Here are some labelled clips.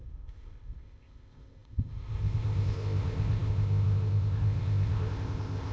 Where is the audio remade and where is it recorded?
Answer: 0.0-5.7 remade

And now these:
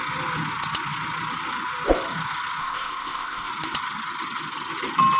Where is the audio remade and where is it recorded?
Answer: 0.0-2.6 recorded; 2.6-3.5 remade; 3.5-5.2 recorded

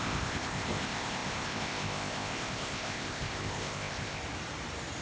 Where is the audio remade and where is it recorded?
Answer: 0.0-4.2 remade; 4.2-5.0 recorded

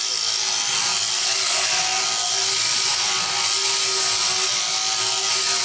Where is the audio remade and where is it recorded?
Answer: 0.0-5.6 recorded